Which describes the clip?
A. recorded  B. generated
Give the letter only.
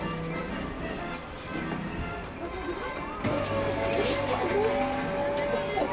A